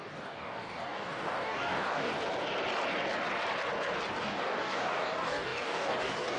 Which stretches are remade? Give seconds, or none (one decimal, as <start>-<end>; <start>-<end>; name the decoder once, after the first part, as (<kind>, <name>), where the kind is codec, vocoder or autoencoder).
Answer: 0.0-2.1 (codec, DAC); 4.2-6.4